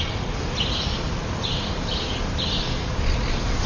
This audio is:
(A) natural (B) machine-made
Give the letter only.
A